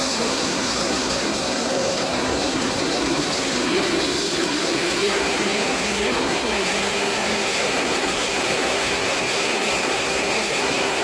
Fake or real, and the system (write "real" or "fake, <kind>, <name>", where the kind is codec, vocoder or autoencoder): fake, codec, SNAC